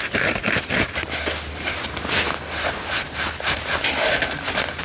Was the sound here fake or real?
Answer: real